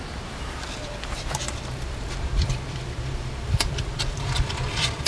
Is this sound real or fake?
fake